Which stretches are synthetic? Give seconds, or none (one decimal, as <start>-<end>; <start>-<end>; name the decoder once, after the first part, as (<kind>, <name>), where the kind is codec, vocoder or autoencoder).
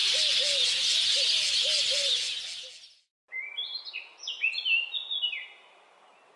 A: none